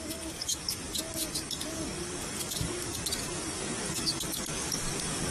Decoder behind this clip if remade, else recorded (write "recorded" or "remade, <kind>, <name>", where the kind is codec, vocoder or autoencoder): remade, codec, DAC